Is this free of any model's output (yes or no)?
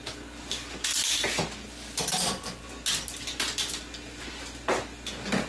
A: yes